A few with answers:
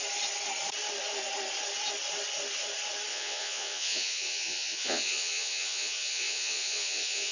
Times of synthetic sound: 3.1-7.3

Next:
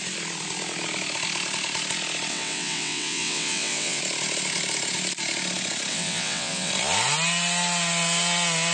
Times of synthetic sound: 2.3-4.0; 5.9-6.7

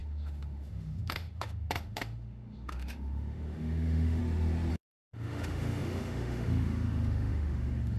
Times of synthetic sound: 0.0-4.2; 4.7-8.0